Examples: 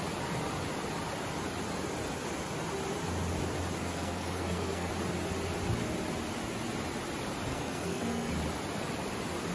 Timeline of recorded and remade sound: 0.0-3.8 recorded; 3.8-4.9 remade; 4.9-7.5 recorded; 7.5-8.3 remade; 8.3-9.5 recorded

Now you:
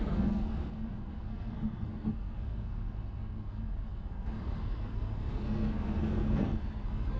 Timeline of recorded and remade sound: 0.0-7.2 remade

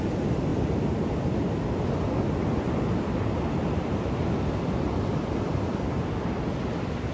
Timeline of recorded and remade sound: 0.0-7.1 recorded

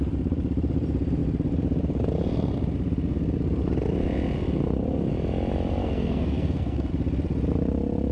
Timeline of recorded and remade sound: 0.0-5.8 recorded; 5.8-6.9 remade; 6.9-8.1 recorded

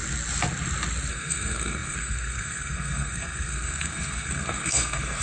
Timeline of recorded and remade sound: 0.0-1.1 recorded; 1.1-5.2 remade

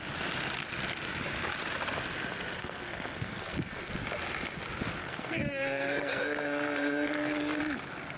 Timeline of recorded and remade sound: 0.0-2.6 recorded; 2.6-3.9 remade; 3.9-5.0 recorded; 5.0-7.6 remade; 7.6-8.2 recorded

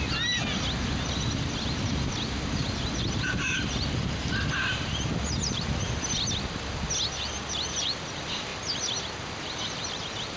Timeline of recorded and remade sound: 0.0-10.4 recorded